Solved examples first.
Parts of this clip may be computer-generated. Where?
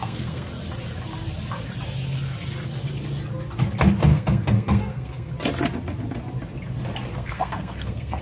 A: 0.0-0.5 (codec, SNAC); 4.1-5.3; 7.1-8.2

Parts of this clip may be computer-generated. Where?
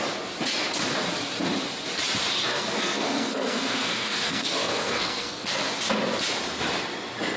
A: 2.5-5.6 (codec, SNAC)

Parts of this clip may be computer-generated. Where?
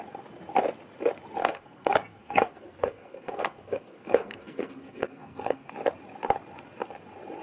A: 1.4-5.7 (codec, SNAC)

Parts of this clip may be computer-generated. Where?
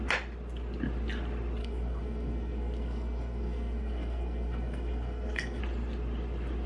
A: 1.6-5.6 (codec, SNAC)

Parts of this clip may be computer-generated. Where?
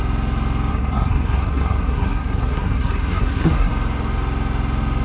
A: 0.7-3.7 (codec, SNAC)